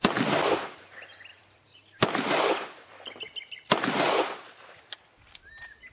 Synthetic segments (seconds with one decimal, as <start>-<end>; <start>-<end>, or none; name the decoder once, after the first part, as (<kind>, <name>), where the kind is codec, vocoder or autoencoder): 1.3-4.8 (vocoder, BigVGAN v2)